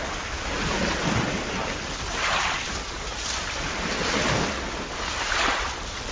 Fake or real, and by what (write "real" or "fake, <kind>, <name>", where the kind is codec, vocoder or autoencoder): real